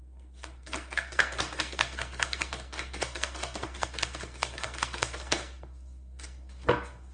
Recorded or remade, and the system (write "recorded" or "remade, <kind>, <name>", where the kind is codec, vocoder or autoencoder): remade, codec, SNAC